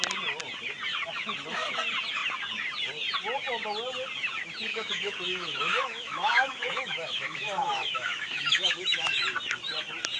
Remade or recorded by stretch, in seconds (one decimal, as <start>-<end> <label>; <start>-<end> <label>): 0.0-4.7 recorded; 4.7-9.2 remade; 9.2-10.2 recorded